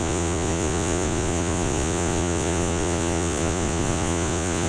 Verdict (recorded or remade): remade